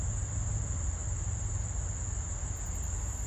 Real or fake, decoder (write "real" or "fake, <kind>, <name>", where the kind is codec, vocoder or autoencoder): real